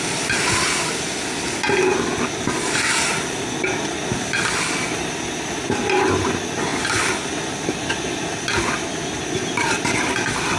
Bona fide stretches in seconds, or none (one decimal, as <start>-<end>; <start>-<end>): 0.0-10.6